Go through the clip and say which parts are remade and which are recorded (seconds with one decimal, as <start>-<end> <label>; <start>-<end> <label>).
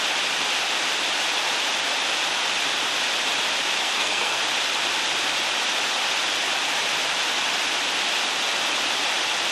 0.0-3.8 recorded; 3.8-4.4 remade; 4.4-9.5 recorded